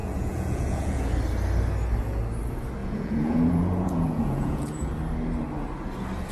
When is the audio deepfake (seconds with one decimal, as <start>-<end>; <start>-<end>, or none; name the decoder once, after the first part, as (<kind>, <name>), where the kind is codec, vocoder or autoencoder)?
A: 0.0-1.1 (vocoder, Vocos); 2.8-4.9